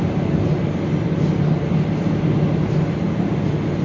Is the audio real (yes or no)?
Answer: yes